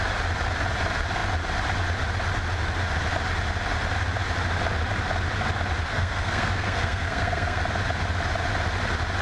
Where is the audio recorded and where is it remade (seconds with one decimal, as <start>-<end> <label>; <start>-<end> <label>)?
0.0-5.9 recorded; 5.9-7.6 remade; 7.6-9.2 recorded